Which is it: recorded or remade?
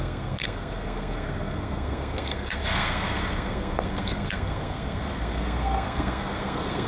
remade